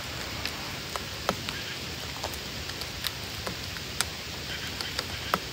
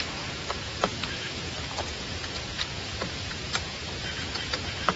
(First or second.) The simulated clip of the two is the second